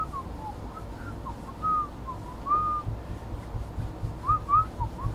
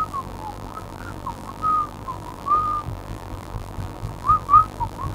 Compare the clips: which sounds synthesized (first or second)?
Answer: second